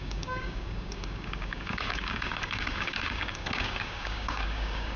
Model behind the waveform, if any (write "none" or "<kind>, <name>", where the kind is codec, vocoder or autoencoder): codec, DAC